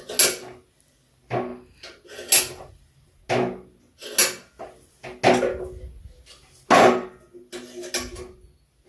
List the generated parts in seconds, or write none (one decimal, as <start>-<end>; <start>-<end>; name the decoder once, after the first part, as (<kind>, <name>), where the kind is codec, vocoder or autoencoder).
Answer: none